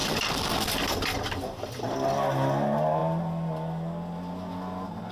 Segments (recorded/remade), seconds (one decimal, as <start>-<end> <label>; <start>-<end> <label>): 0.0-5.1 recorded